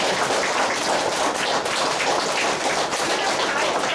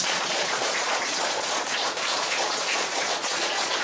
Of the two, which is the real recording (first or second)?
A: first